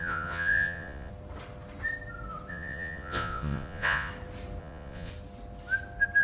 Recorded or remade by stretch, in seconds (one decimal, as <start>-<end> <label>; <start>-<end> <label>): 0.0-1.1 remade; 1.1-2.5 recorded; 2.5-4.1 remade; 4.1-4.6 recorded; 4.6-5.1 remade; 5.1-6.2 recorded